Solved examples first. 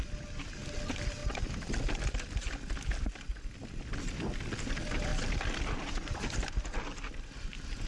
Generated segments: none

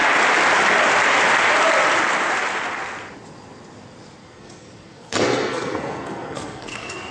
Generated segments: 4.2-7.1 (codec, SNAC)

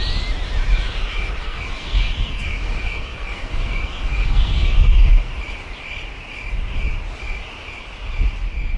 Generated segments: 1.4-5.3 (codec, SNAC)

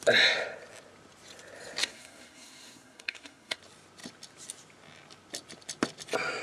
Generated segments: 1.8-3.6 (codec, SNAC)